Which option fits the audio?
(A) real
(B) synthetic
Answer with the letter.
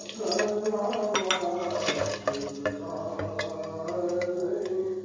A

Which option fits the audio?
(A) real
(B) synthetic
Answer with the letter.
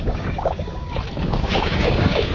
B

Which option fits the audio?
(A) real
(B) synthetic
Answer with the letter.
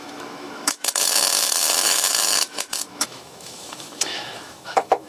B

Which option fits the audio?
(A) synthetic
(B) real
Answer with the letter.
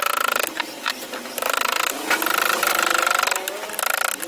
B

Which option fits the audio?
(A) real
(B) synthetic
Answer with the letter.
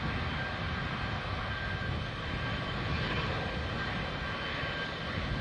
A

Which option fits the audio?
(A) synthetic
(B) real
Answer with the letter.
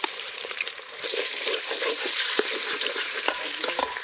A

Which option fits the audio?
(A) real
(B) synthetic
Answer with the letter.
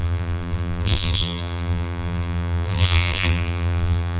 B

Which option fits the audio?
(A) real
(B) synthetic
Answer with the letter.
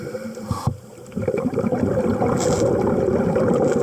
A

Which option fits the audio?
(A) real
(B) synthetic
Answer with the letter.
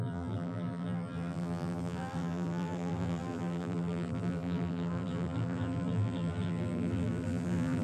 B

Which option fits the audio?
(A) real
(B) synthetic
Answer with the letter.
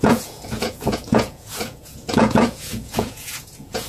B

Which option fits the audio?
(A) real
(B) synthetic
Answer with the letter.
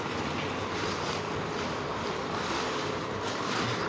B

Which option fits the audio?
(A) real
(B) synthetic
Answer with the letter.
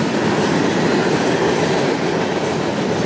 A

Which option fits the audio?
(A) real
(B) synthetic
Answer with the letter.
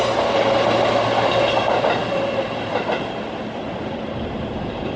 A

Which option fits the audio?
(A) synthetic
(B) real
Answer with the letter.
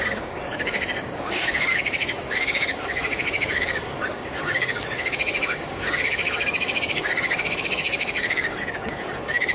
A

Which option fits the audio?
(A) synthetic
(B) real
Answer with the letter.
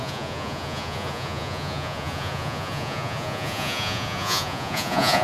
A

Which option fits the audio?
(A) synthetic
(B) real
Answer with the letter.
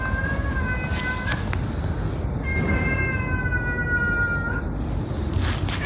B